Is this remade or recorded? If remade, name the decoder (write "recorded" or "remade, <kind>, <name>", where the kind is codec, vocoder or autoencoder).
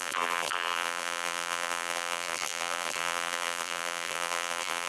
remade, vocoder, BigVGAN v2